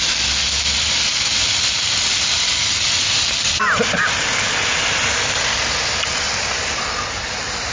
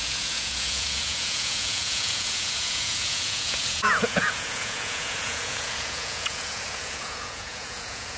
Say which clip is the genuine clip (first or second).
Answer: first